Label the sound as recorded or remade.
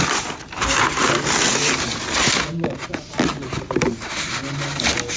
recorded